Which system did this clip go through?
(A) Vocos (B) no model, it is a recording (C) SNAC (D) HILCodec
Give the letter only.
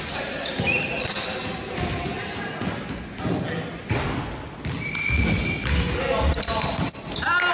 B